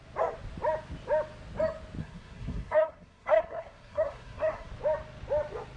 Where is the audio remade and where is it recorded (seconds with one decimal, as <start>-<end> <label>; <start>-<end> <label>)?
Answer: 0.0-2.0 recorded; 2.0-4.7 remade; 4.7-5.8 recorded